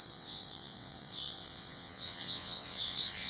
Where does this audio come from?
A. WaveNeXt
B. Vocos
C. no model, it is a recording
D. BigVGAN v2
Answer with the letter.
A